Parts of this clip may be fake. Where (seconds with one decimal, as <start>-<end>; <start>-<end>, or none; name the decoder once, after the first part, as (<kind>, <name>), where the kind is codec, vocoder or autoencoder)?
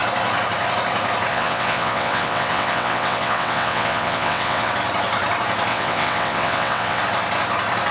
1.3-4.7 (vocoder, WaveNeXt); 5.7-7.0